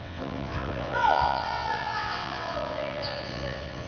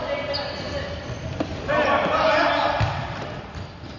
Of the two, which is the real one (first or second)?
second